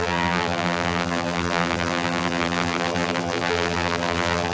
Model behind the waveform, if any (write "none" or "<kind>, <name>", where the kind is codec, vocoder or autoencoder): vocoder, BigVGAN v2